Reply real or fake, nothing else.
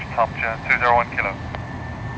real